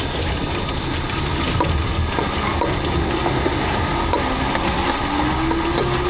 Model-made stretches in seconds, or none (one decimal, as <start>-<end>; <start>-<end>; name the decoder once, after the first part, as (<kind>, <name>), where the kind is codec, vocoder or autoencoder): none